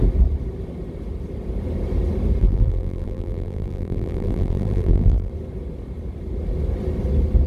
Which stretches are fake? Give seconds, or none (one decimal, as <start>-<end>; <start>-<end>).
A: 2.4-5.3